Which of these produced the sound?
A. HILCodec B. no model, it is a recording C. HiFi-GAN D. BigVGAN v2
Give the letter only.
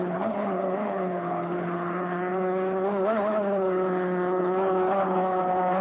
A